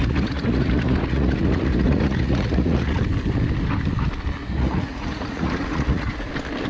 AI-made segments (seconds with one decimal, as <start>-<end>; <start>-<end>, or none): 0.0-3.0; 4.4-6.3